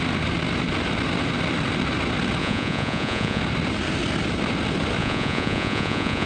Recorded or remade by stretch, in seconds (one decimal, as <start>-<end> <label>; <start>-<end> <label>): 0.0-2.4 recorded; 2.4-3.4 remade; 3.4-5.0 recorded; 5.0-6.3 remade